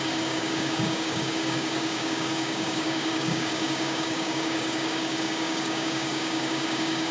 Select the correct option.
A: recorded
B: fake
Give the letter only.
B